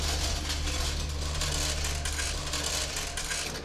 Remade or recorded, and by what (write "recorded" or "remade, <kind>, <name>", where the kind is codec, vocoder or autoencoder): recorded